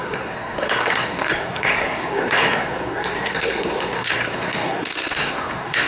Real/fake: fake